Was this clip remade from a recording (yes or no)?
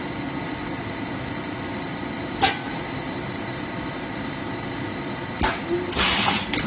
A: no